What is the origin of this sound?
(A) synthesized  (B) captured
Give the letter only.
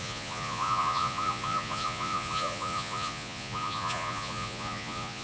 A